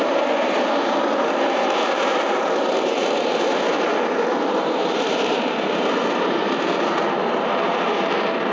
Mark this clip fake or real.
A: fake